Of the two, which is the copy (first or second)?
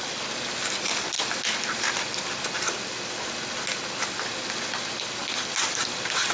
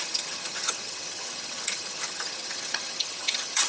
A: second